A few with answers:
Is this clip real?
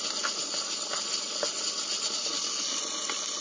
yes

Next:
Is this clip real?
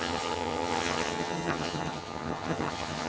no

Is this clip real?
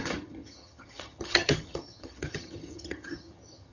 no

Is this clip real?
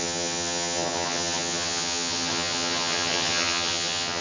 no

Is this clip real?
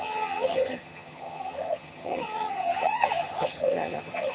no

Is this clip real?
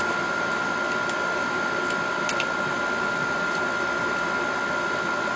yes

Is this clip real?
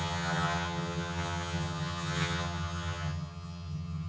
no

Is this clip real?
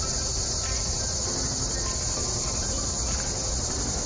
yes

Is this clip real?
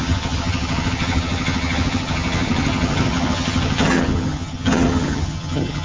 no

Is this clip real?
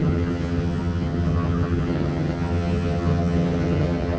no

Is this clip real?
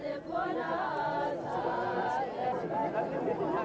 yes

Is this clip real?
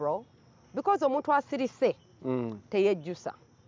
yes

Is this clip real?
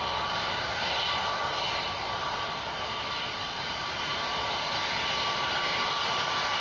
yes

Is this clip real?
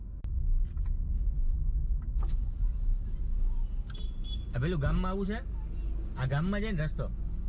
yes